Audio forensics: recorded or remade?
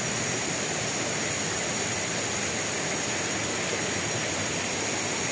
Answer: recorded